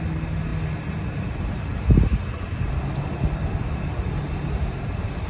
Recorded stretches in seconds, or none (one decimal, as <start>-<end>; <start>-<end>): 0.0-5.3